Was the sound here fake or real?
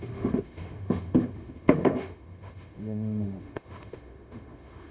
fake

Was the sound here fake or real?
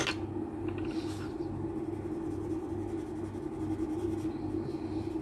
real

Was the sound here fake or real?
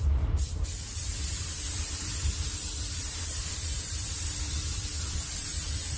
real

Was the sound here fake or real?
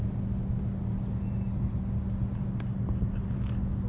real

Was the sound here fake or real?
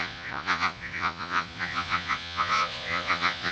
fake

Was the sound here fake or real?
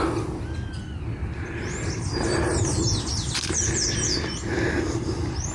real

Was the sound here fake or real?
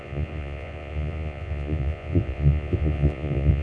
fake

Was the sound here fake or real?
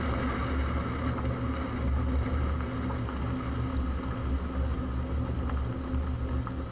real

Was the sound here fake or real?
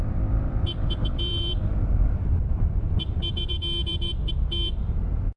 fake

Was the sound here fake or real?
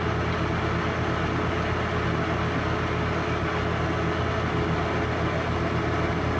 real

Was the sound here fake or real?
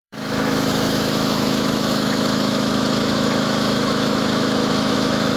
fake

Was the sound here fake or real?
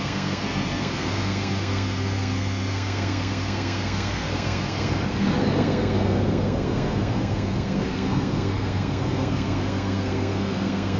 fake